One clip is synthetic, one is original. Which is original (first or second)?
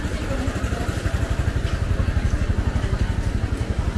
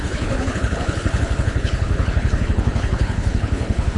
first